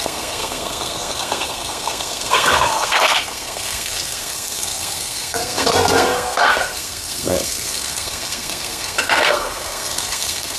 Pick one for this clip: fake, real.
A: fake